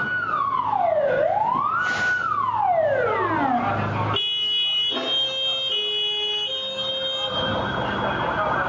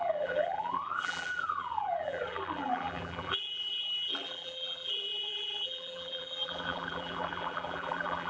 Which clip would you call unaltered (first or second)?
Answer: first